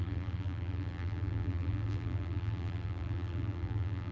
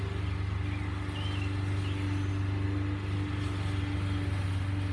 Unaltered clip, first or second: second